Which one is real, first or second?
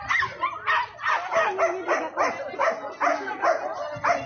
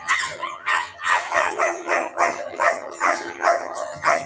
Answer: first